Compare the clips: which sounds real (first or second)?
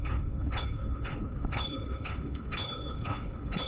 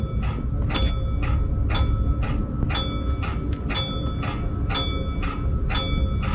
second